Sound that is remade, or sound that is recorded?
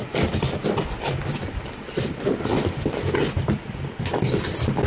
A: recorded